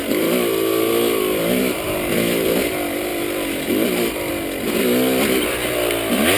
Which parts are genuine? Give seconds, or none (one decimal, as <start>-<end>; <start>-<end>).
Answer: 0.0-3.1; 4.3-6.4